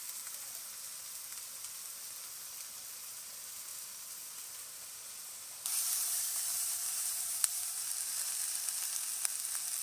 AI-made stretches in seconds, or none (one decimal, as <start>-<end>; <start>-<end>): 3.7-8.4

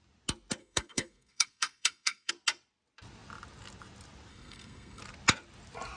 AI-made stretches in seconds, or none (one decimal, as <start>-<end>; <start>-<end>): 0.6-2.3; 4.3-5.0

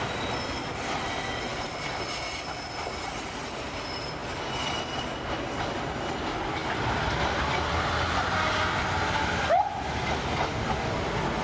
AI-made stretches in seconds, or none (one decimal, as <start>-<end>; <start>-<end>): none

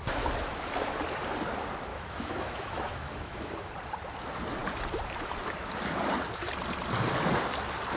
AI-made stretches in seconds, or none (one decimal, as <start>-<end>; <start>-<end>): 1.9-3.7